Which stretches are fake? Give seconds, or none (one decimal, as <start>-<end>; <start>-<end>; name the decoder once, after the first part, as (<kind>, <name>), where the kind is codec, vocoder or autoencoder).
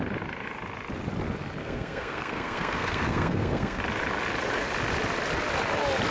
1.6-3.8 (codec, SNAC)